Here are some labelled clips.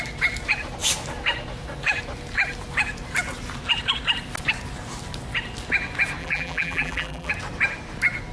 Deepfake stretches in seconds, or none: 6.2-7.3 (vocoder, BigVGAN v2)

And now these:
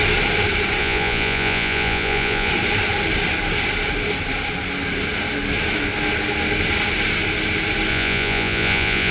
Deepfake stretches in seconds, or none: 0.8-2.5 (vocoder, Vocos); 7.9-9.1

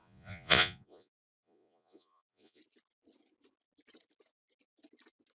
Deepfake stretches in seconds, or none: 0.0-2.6 (vocoder, Vocos)